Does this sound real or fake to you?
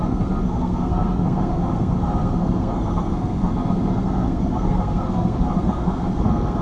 fake